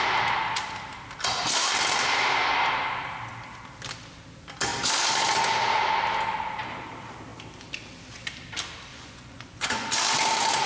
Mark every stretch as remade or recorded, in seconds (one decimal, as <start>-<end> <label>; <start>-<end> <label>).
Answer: 0.0-8.9 recorded; 8.9-9.9 remade; 9.9-10.7 recorded